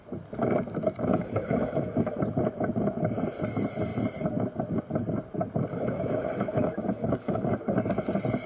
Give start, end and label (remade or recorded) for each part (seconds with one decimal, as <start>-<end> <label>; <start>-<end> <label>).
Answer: 0.0-1.1 recorded; 1.1-2.2 remade; 2.2-5.7 recorded; 5.7-7.6 remade; 7.6-8.5 recorded